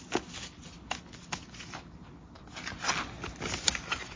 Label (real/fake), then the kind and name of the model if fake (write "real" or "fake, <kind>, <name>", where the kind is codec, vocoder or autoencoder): real